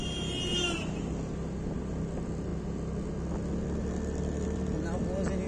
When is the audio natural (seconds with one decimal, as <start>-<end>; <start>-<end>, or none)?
0.0-5.5